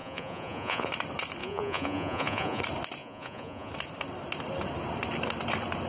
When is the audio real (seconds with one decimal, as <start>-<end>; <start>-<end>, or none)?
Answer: 0.9-1.4; 2.6-3.0; 3.7-5.9